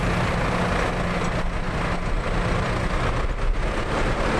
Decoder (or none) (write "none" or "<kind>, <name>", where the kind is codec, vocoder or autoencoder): none